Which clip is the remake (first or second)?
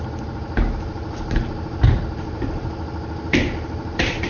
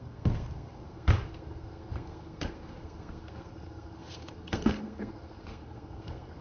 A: second